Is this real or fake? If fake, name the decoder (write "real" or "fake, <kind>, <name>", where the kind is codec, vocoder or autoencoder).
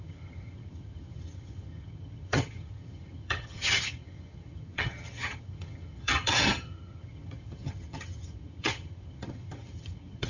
fake, vocoder, HiFi-GAN